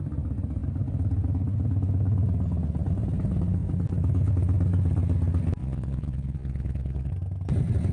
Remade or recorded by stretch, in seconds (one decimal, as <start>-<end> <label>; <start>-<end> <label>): 0.0-5.6 recorded; 5.6-7.1 remade; 7.1-7.9 recorded